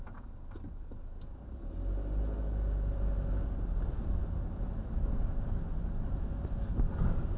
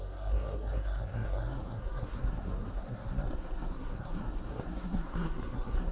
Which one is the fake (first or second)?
second